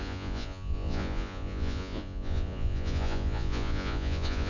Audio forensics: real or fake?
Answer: fake